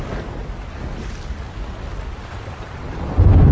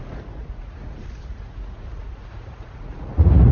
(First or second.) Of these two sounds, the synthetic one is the second